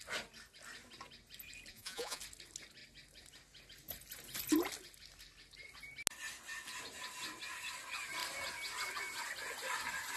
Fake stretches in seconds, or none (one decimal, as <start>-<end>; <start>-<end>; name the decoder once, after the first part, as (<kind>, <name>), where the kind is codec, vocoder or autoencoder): 1.7-2.2 (vocoder, Vocos)